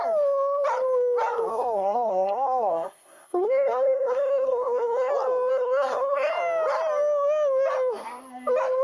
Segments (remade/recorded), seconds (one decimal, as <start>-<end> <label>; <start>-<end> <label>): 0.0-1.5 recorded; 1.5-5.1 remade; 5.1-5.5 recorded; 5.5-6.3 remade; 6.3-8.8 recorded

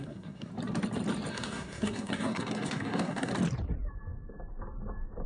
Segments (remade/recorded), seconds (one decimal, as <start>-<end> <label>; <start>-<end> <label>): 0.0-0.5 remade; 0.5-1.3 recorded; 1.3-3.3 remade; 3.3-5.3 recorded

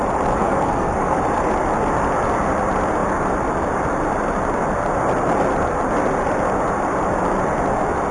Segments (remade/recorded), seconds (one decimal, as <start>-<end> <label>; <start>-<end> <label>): 0.0-0.4 recorded; 0.4-1.2 remade; 1.2-8.1 recorded

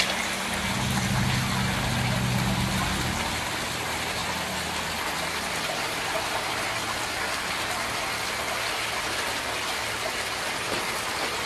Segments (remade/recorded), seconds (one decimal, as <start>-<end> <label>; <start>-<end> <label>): 0.0-11.5 recorded